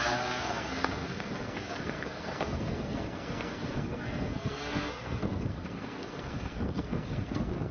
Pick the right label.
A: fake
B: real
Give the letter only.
A